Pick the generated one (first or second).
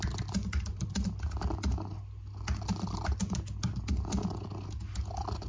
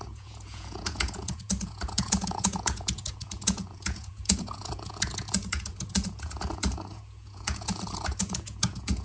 second